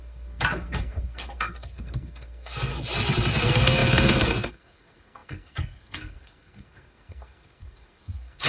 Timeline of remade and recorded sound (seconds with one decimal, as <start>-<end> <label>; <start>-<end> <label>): 0.0-2.7 remade; 2.7-3.3 recorded; 3.3-8.5 remade